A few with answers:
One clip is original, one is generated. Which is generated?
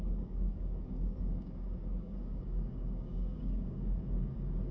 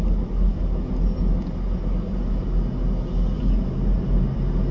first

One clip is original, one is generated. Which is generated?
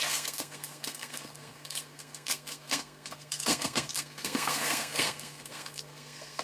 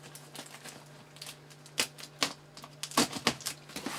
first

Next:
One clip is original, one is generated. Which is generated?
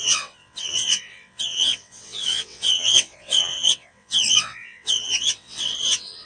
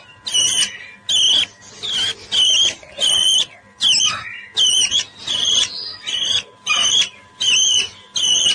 first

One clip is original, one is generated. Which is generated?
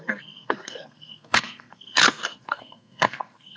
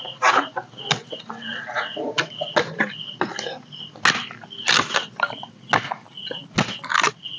first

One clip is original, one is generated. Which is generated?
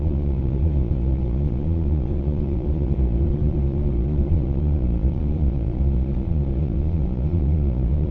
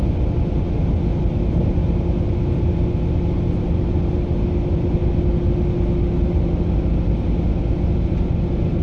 first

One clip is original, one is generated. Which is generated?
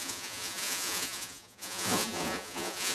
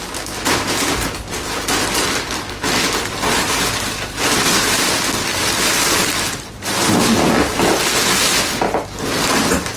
first